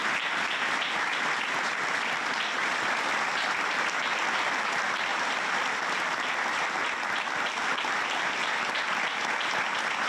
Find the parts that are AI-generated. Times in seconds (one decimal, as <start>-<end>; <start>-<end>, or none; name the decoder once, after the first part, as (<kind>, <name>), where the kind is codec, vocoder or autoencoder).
0.0-4.3 (vocoder, BigVGAN v2); 5.1-5.7